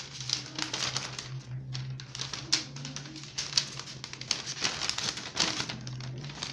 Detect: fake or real real